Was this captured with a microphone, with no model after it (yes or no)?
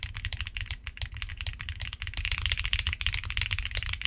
yes